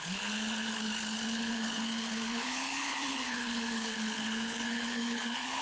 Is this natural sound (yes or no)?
no